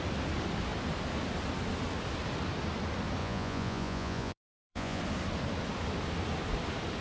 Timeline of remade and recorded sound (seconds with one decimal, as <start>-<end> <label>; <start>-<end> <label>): 0.0-3.2 recorded; 3.2-5.0 remade; 5.0-7.0 recorded

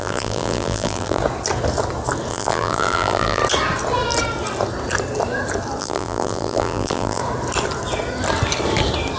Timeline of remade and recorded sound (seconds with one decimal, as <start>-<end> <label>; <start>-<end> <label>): 0.0-1.2 remade; 1.2-2.3 recorded; 2.3-3.4 remade; 3.4-5.8 recorded; 5.8-7.2 remade; 7.2-9.2 recorded

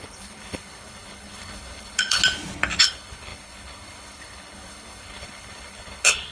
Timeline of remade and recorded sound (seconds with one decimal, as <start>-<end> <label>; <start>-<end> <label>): 0.0-2.2 remade; 2.2-2.8 recorded; 2.8-6.3 remade

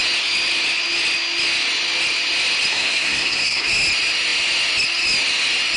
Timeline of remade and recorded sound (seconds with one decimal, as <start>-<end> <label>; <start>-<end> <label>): 0.0-2.7 recorded; 2.7-3.7 remade; 3.7-5.8 recorded

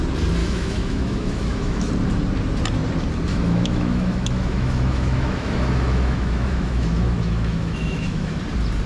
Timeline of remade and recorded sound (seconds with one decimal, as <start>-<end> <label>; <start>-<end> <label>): 0.0-0.4 recorded; 0.4-1.9 remade; 1.9-3.3 recorded; 3.3-8.4 remade; 8.4-8.9 recorded